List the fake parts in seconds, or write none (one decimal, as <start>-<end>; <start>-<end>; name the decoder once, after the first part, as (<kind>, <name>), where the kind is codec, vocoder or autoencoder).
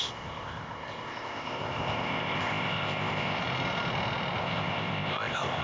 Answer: 0.0-3.4 (codec, ZipCodec); 4.4-5.6